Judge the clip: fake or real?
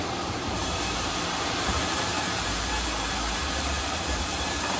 fake